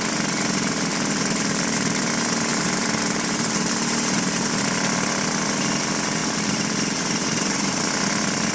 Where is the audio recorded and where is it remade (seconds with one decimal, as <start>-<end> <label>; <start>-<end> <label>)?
0.0-0.9 recorded; 0.9-2.0 remade; 2.0-2.5 recorded; 2.5-4.6 remade; 4.6-6.2 recorded; 6.2-7.8 remade; 7.8-8.5 recorded